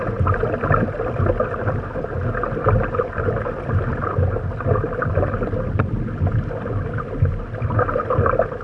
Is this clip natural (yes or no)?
yes